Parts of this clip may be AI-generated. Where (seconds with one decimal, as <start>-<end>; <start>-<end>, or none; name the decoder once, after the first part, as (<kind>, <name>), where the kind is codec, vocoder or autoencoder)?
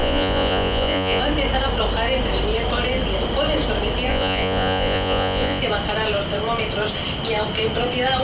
0.0-1.2 (vocoder, Vocos); 4.1-5.6